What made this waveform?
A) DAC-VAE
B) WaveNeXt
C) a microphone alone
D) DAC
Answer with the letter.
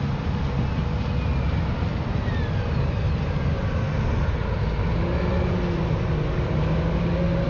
C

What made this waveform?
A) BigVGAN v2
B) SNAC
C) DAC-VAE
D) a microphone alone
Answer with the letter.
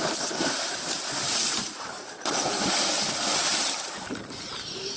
A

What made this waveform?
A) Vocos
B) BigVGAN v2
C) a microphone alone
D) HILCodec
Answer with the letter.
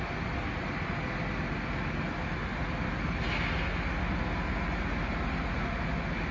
C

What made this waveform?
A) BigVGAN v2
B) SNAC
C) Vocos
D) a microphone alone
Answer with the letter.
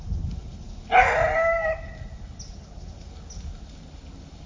D